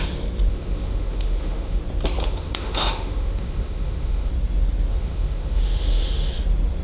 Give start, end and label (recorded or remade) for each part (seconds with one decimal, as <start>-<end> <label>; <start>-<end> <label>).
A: 0.0-0.5 recorded; 0.5-1.8 remade; 1.8-2.2 recorded; 2.2-4.3 remade; 4.3-4.9 recorded; 4.9-6.3 remade; 6.3-6.8 recorded